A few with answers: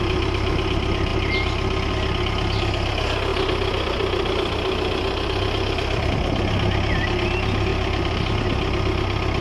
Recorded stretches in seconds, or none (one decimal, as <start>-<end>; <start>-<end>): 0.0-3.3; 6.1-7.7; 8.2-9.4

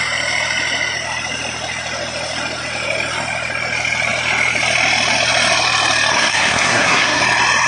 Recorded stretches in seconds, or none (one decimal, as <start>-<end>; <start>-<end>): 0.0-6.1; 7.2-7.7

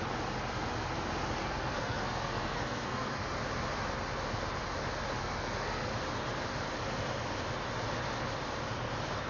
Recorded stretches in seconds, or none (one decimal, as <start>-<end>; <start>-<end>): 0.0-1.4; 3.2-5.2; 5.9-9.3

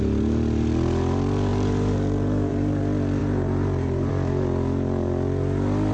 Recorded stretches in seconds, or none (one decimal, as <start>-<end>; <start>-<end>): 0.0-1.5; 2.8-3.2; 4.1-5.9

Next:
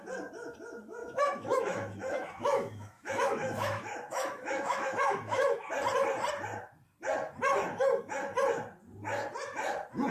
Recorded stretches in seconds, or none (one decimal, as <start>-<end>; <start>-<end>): 0.0-1.0; 5.7-10.1

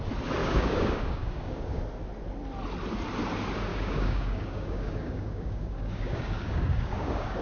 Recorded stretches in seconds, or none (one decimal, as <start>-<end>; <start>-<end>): 0.0-0.4; 1.8-3.7